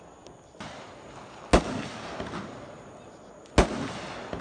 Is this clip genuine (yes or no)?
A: yes